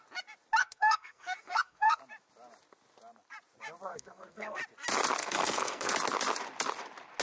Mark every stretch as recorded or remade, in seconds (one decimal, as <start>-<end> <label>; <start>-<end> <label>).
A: 0.0-0.6 recorded; 0.6-2.0 remade; 2.0-3.9 recorded; 3.9-4.6 remade; 4.6-5.2 recorded; 5.2-5.9 remade; 5.9-7.2 recorded